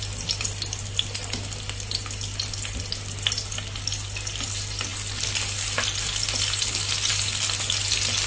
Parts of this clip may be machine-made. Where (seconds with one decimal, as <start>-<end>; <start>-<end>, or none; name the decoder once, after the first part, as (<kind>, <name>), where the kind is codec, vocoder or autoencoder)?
none